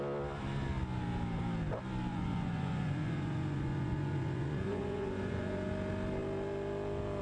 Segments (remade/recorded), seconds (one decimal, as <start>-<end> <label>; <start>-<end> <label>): 0.0-2.1 recorded; 2.1-5.7 remade; 5.7-7.2 recorded